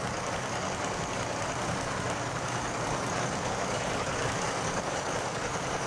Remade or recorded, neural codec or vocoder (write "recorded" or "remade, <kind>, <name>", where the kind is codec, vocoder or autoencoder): remade, codec, DAC